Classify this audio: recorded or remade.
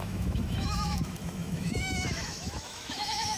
remade